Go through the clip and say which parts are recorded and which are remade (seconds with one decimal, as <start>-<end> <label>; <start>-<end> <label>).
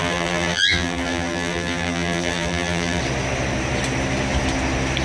0.0-3.0 remade; 3.0-5.0 recorded